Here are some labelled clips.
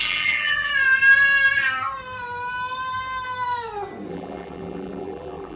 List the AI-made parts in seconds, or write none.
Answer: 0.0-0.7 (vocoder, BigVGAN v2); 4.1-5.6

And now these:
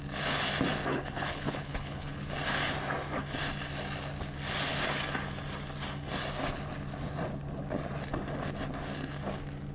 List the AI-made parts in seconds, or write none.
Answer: 0.9-2.3 (codec, HILCodec)